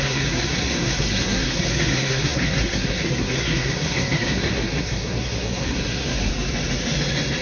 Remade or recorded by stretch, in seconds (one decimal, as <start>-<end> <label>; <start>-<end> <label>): 0.0-6.3 remade; 6.3-7.4 recorded